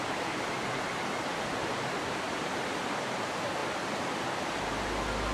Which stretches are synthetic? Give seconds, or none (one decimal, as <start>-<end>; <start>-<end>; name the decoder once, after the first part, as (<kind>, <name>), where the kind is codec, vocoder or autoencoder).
1.6-2.7 (vocoder, BigVGAN v2)